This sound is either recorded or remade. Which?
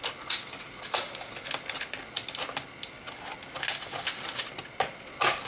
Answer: recorded